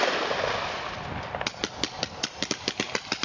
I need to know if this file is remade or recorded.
recorded